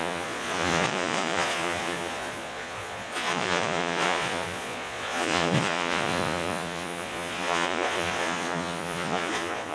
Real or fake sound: fake